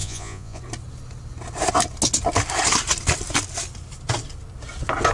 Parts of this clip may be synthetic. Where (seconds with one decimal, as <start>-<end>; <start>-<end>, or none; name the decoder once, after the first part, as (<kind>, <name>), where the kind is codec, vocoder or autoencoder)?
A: 0.0-0.6 (vocoder, Vocos)